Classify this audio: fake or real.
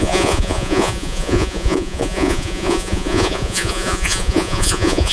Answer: fake